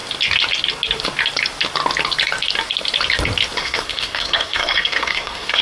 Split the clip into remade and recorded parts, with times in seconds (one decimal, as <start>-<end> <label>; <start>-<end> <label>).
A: 0.0-3.6 recorded; 3.6-5.6 remade

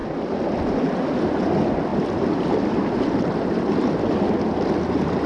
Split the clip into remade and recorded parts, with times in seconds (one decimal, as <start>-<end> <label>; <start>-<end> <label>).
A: 0.0-5.3 recorded

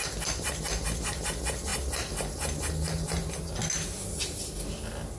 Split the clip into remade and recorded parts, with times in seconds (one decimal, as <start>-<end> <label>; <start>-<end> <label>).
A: 0.0-5.2 recorded

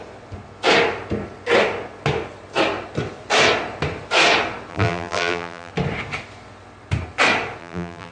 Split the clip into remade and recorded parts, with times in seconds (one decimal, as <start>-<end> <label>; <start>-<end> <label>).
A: 0.0-4.7 recorded; 4.7-5.7 remade; 5.7-7.6 recorded; 7.6-8.1 remade

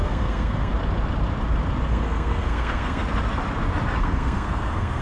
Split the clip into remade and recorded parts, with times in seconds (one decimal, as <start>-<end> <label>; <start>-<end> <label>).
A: 0.0-0.7 remade; 0.7-1.9 recorded; 1.9-3.0 remade; 3.0-4.0 recorded; 4.0-5.0 remade